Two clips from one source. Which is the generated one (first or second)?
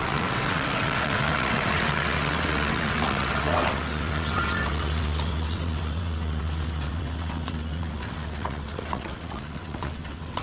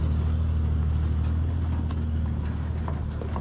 first